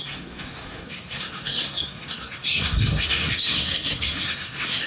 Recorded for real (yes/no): no